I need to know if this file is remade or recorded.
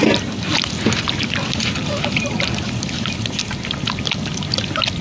recorded